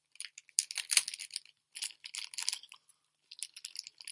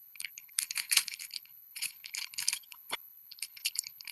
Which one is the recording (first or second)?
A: first